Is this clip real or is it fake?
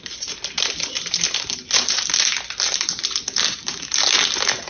real